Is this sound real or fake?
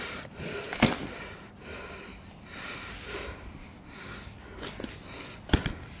real